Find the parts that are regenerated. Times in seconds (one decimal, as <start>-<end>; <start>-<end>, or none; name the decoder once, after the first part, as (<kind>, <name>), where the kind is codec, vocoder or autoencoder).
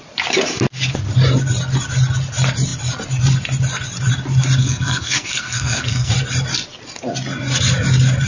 4.6-6.1 (codec, SNAC)